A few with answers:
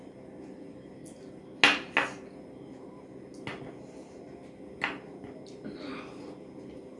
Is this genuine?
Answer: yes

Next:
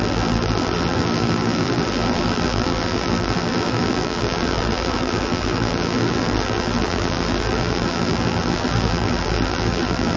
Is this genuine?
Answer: no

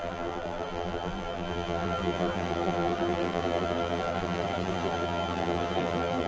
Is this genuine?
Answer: no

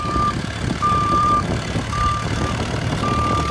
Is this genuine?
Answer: no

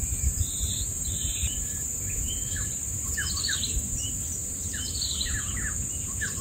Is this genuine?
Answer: no